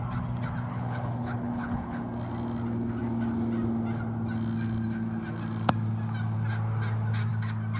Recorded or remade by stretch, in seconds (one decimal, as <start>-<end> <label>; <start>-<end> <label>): 0.0-0.7 recorded; 0.7-2.0 remade; 2.0-7.8 recorded